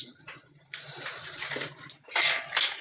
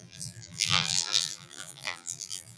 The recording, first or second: first